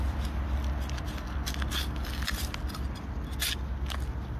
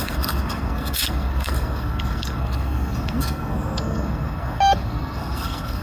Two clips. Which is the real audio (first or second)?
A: first